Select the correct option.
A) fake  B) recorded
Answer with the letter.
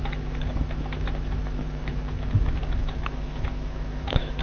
A